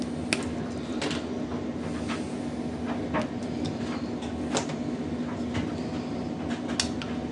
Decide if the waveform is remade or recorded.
recorded